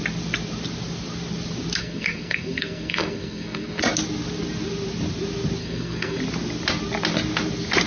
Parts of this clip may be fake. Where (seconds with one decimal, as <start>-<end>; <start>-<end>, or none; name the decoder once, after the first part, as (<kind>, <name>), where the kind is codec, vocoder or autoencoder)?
1.8-3.8 (codec, SNAC); 5.6-6.2